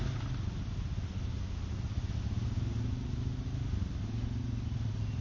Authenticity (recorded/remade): recorded